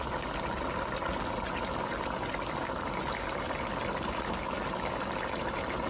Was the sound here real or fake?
real